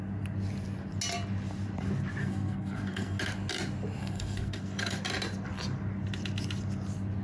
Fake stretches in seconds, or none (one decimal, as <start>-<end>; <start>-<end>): 2.2-3.2; 4.0-5.0